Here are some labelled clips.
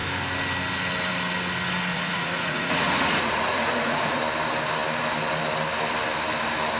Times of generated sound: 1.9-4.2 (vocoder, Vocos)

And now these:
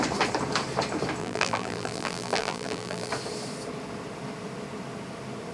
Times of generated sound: 1.2-3.1 (vocoder, BigVGAN v2)

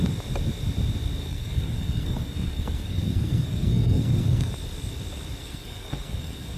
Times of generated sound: 1.2-4.5 (codec, SNAC); 5.4-6.6

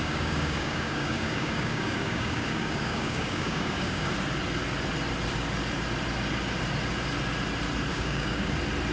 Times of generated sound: 0.0-4.1 (codec, DAC); 7.9-8.5